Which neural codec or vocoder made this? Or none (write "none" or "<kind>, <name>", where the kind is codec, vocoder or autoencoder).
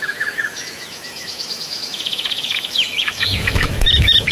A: autoencoder, DAC-VAE